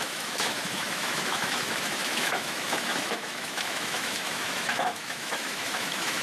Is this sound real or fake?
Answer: fake